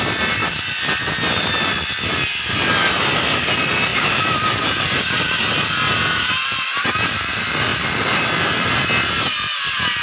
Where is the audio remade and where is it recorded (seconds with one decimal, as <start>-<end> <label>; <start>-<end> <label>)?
0.0-0.4 recorded; 0.4-1.0 remade; 1.0-3.9 recorded; 3.9-5.4 remade; 5.4-10.0 recorded